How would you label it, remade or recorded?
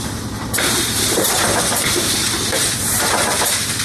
remade